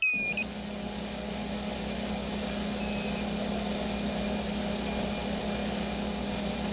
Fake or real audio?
real